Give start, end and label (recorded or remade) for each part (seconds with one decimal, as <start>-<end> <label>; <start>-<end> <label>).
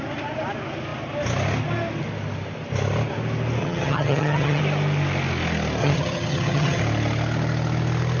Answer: 0.0-3.6 recorded; 3.6-4.6 remade; 4.6-5.8 recorded; 5.8-6.8 remade; 6.8-8.2 recorded